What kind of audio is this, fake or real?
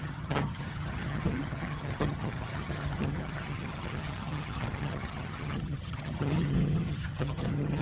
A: fake